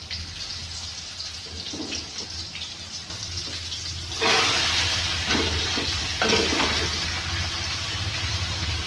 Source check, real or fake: real